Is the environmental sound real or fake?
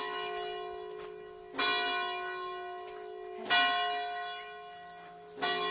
real